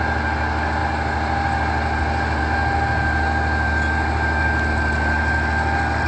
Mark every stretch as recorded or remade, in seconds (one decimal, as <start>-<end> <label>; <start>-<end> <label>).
0.0-6.1 recorded